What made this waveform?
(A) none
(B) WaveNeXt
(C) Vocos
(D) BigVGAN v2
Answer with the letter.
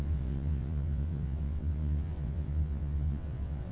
B